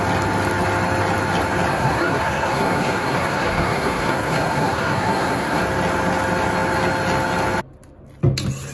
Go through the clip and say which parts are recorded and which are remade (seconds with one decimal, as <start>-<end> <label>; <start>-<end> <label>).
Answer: 0.0-1.7 recorded; 1.7-5.6 remade; 5.6-8.7 recorded